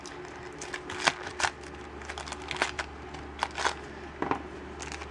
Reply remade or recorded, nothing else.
recorded